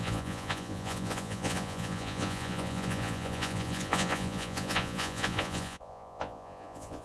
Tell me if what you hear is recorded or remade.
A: remade